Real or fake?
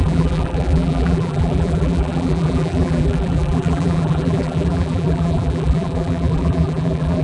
fake